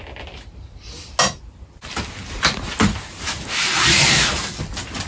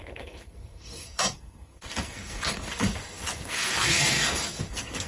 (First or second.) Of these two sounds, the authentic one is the first